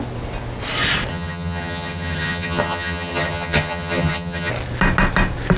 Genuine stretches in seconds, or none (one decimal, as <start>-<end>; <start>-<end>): 0.0-1.1; 4.5-5.6